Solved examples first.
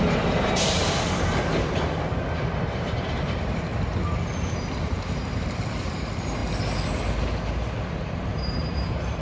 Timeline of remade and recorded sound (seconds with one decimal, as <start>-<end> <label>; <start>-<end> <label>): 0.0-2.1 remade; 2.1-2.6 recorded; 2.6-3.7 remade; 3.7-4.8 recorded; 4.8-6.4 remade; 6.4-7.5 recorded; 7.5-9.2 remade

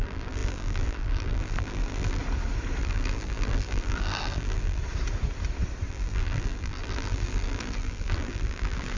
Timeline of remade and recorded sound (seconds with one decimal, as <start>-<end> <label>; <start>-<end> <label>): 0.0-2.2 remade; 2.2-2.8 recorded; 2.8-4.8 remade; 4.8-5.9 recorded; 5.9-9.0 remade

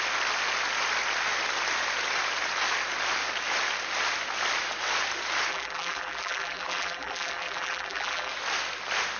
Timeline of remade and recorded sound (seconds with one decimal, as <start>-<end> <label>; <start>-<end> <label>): 0.0-5.5 recorded; 5.5-8.3 remade; 8.3-9.2 recorded

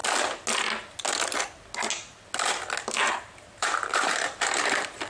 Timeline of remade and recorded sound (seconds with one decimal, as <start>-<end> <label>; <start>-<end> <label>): 0.0-3.1 recorded; 3.1-5.1 remade